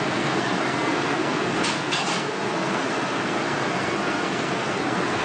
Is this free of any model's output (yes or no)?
no